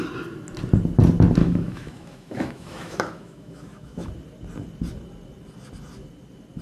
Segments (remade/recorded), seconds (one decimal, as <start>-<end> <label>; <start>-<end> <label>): 0.0-1.4 recorded; 1.4-4.1 remade; 4.1-6.6 recorded